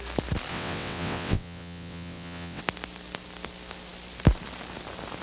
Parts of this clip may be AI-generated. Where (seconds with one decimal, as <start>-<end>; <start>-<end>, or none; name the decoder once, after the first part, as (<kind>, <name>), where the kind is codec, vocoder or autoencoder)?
0.5-2.6 (vocoder, WaveNeXt)